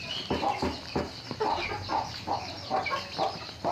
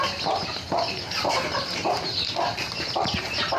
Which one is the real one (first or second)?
first